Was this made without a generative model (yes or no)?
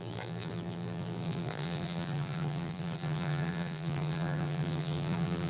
no